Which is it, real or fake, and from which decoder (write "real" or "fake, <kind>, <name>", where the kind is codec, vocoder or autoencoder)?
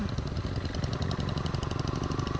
real